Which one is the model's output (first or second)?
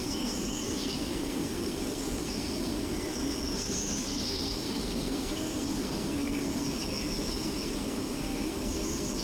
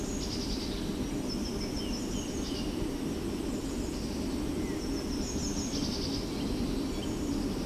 first